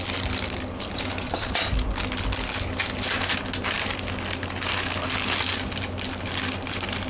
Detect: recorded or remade recorded